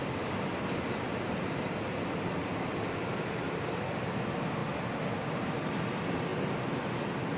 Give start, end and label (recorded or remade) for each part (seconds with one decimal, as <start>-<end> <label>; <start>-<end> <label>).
0.0-4.6 remade; 4.6-5.5 recorded; 5.5-6.3 remade; 6.3-7.4 recorded